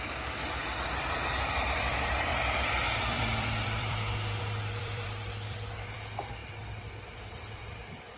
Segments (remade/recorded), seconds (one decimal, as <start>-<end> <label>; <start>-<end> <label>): 0.0-8.2 remade